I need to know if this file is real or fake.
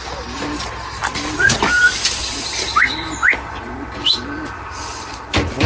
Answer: real